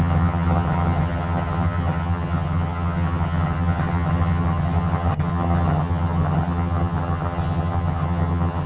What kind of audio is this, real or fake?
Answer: fake